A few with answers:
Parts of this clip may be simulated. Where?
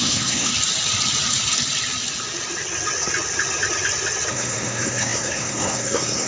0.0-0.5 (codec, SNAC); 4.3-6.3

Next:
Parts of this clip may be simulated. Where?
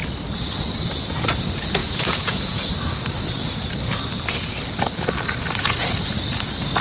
1.8-2.7 (vocoder, Vocos)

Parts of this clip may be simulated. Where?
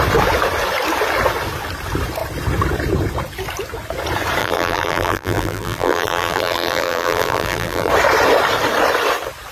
4.4-7.9 (vocoder, BigVGAN v2)